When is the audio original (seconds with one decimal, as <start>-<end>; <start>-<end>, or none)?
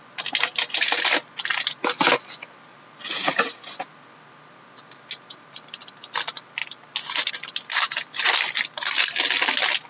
0.0-9.9